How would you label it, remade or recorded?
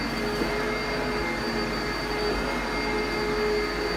recorded